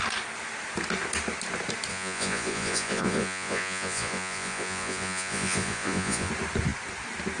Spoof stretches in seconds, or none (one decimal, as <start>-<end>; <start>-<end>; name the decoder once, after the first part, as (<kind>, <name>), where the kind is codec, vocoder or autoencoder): 1.9-6.3 (vocoder, Vocos)